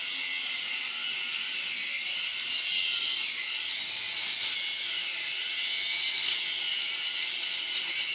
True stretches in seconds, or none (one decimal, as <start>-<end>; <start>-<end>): 0.0-8.1